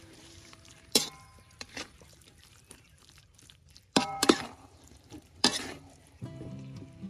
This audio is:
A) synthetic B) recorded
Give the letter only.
A